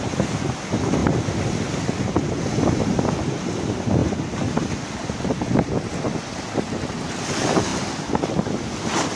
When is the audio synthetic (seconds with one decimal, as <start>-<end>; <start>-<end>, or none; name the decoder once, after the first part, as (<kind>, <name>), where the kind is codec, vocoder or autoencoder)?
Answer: none